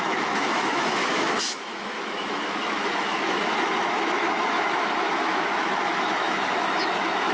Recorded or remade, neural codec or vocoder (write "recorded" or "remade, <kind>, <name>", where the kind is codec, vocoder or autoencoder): remade, autoencoder, DAC-VAE